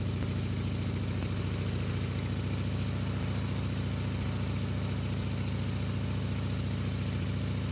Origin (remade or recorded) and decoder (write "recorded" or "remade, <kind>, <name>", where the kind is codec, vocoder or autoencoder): recorded